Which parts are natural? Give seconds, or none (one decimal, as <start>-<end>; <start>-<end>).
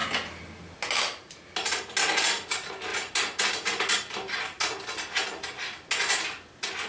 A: 0.0-6.9